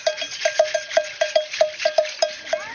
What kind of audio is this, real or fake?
real